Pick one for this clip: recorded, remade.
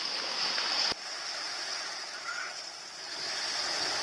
remade